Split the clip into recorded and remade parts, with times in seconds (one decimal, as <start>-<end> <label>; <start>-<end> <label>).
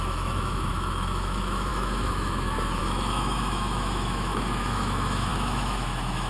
0.0-6.3 remade